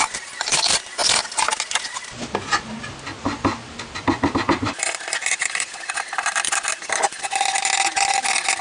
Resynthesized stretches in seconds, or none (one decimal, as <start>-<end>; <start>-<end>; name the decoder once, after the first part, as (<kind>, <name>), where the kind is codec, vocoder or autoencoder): none